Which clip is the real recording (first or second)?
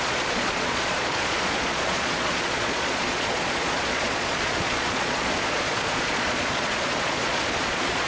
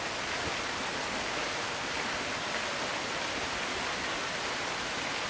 second